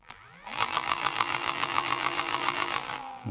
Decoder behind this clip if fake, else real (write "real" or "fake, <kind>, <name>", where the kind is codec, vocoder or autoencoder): fake, vocoder, BigVGAN v2